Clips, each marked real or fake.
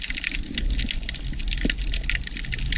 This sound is real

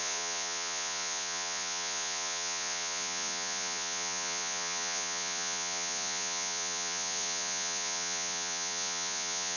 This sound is fake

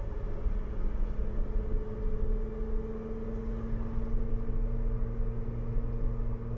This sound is real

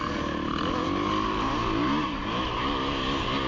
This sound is real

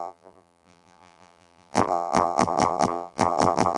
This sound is fake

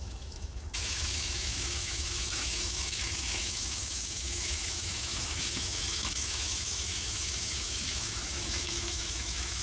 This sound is fake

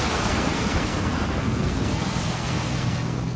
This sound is fake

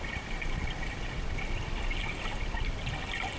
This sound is real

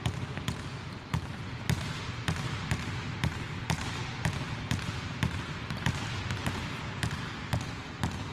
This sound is real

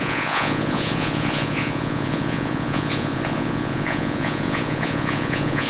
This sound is fake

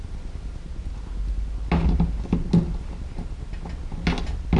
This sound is real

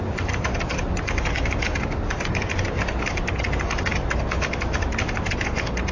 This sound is real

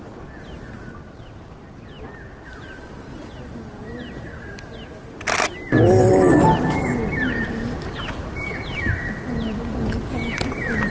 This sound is real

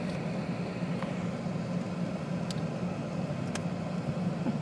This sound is real